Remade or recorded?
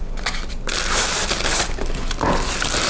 recorded